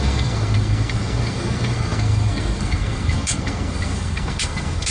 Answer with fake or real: fake